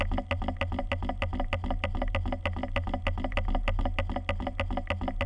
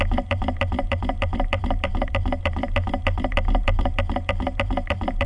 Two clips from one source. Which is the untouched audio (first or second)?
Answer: first